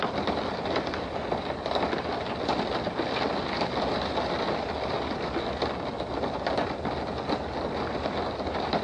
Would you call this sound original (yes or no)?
yes